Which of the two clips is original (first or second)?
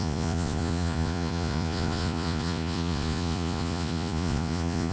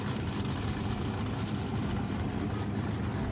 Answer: second